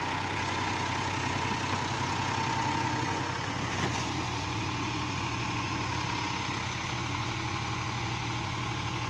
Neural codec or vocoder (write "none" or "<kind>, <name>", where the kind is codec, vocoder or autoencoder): vocoder, Vocos